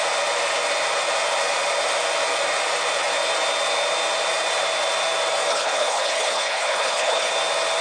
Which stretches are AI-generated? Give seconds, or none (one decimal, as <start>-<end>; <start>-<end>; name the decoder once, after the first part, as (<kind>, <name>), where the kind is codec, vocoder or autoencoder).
5.5-7.3 (codec, HILCodec)